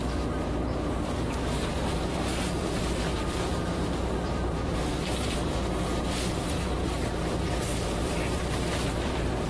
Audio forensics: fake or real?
fake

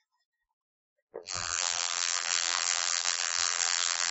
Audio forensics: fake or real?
fake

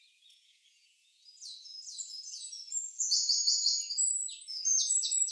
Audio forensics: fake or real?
fake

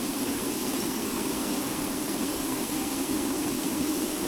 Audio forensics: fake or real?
fake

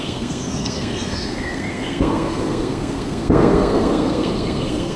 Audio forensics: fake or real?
fake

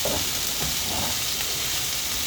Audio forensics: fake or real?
real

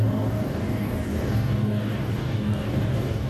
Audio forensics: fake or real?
fake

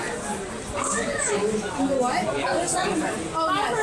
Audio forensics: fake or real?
real